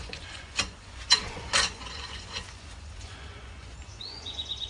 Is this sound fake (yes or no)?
yes